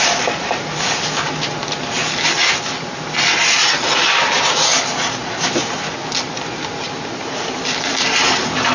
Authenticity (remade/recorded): recorded